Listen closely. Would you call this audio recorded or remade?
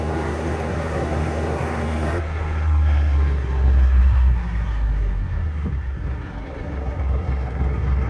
remade